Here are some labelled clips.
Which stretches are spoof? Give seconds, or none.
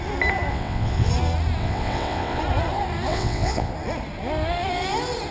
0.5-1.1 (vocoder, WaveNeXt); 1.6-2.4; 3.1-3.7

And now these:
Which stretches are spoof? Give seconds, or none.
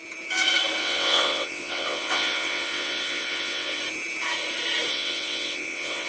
0.8-3.8 (vocoder, WaveNeXt); 4.9-6.1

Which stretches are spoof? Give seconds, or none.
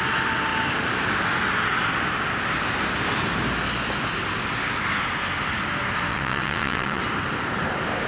6.1-7.0 (vocoder, WaveNeXt)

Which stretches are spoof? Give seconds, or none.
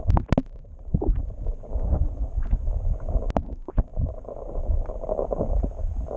none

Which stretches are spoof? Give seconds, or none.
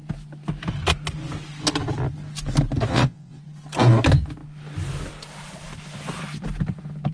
2.9-3.4 (vocoder, WaveNeXt)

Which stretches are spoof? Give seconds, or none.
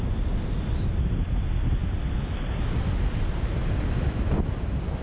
none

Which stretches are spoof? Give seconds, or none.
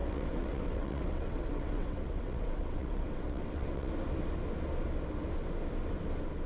0.0-3.9 (vocoder, WaveNeXt)